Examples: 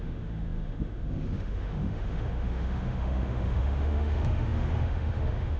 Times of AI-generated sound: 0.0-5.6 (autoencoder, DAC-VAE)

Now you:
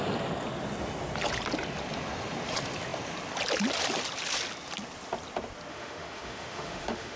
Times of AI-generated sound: 5.7-7.2 (autoencoder, DAC-VAE)